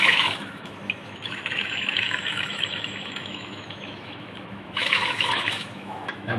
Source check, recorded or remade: remade